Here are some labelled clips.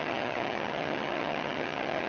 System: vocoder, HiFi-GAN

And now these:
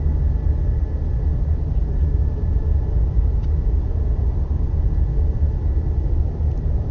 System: none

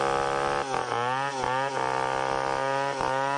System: none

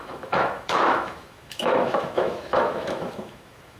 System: autoencoder, DAC-VAE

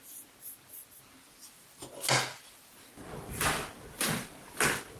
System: none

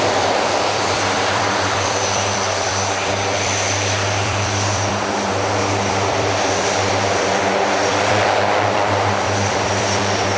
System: vocoder, BigVGAN v2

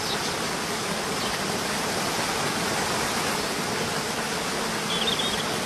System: none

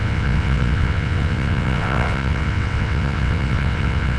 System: vocoder, WaveNeXt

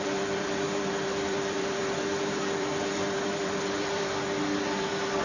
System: vocoder, BigVGAN v2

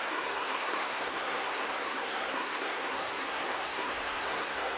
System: codec, SNAC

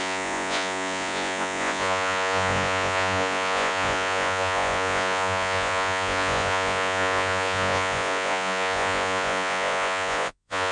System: vocoder, Vocos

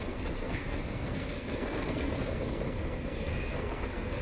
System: codec, SNAC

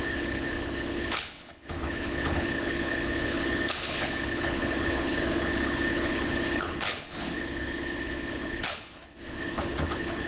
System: codec, HILCodec